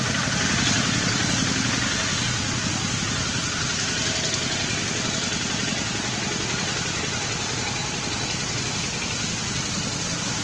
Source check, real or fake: real